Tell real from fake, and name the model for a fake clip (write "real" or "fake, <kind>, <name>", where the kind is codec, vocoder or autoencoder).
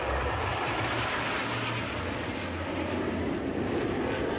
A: real